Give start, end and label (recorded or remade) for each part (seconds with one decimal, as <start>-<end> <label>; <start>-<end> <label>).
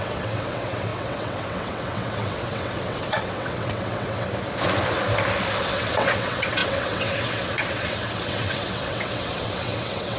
0.0-4.3 remade; 4.3-5.6 recorded; 5.6-10.2 remade